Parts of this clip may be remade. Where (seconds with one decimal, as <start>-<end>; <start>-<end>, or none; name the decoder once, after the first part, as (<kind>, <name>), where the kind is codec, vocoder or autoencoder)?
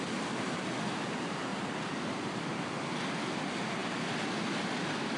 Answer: none